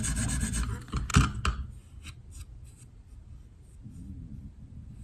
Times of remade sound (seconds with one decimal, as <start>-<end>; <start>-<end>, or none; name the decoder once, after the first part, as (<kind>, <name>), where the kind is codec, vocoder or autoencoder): none